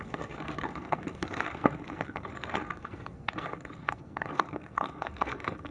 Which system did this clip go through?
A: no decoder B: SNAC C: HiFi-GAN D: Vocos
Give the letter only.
B